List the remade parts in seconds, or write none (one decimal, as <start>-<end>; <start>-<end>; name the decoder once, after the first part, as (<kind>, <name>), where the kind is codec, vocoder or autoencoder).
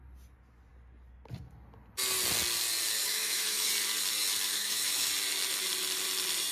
3.0-3.7 (autoencoder, DAC-VAE); 4.5-5.1